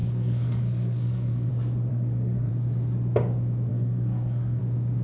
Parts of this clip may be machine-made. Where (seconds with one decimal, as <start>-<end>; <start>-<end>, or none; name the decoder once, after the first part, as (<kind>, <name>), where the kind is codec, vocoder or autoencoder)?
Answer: 0.0-1.5 (codec, SNAC); 1.9-2.5; 3.7-4.6

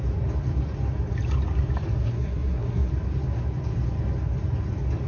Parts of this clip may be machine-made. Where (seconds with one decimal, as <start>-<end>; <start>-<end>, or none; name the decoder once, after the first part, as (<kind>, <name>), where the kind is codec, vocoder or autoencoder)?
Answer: 2.0-2.9 (codec, SNAC)

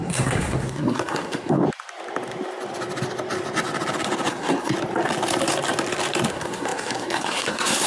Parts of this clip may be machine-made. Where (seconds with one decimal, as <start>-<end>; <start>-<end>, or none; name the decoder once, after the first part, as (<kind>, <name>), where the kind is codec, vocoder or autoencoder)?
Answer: 0.0-1.6 (codec, SNAC); 4.3-4.7; 6.3-7.9

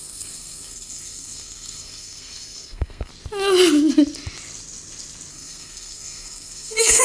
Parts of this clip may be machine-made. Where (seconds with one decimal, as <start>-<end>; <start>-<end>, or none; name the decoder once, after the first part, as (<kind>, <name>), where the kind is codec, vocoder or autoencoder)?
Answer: 0.0-3.1 (codec, SNAC); 5.3-7.0